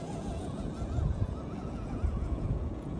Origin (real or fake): fake